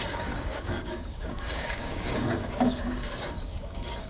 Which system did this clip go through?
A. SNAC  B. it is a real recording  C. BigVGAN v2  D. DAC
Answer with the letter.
D